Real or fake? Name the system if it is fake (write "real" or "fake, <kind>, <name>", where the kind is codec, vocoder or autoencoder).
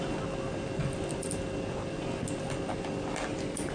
real